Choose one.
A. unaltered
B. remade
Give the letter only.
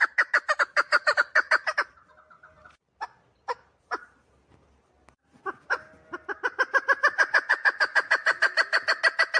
A